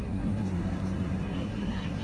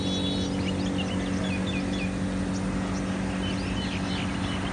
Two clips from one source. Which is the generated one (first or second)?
first